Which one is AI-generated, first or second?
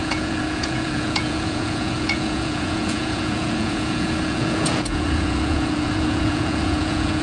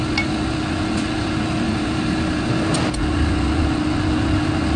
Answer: first